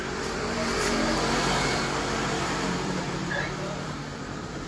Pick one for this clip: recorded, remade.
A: remade